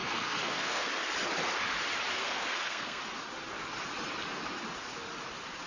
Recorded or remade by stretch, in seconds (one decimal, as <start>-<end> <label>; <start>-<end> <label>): 0.0-0.9 remade; 0.9-2.1 recorded; 2.1-3.0 remade; 3.0-5.7 recorded